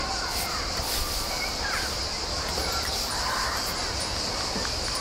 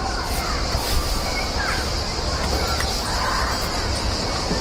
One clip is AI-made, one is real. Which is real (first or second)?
second